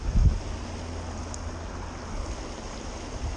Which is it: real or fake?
real